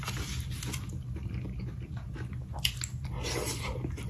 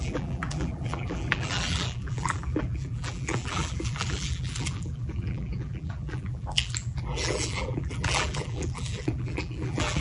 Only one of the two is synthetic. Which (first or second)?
second